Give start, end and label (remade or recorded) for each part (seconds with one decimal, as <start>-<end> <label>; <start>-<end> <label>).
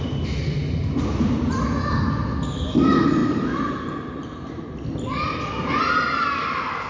0.0-3.2 recorded; 3.2-4.7 remade; 4.7-6.9 recorded